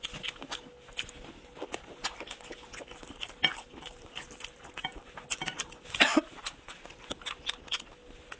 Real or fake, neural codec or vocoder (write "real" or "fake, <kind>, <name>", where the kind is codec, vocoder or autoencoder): real